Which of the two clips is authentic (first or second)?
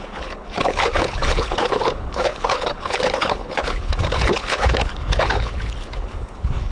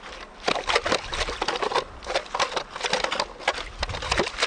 second